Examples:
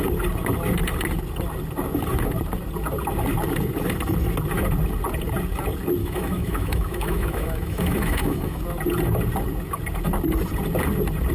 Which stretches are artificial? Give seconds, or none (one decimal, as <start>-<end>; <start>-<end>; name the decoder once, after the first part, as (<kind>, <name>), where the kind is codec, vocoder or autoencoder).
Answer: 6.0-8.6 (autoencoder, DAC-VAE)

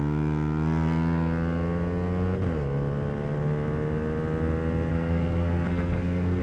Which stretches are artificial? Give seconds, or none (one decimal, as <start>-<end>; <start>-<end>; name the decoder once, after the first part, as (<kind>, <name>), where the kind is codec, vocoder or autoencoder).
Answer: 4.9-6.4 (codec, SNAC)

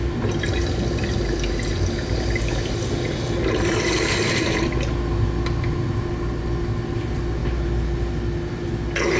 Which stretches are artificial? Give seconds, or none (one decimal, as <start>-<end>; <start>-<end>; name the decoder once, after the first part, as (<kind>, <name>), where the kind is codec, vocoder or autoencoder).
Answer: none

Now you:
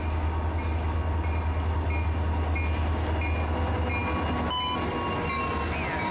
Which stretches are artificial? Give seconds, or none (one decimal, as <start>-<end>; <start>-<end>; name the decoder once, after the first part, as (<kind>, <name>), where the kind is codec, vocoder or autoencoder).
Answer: none